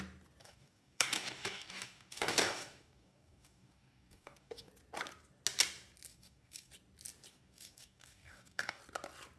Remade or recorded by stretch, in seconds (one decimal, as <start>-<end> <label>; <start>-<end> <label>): 0.0-0.4 recorded; 0.4-4.7 remade; 4.7-6.1 recorded; 6.1-6.7 remade; 6.7-7.3 recorded; 7.3-8.8 remade; 8.8-9.4 recorded